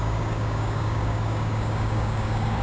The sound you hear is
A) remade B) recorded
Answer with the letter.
A